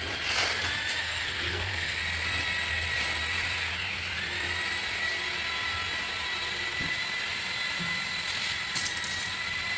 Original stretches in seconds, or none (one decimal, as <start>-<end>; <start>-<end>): 0.0-1.0; 2.0-9.8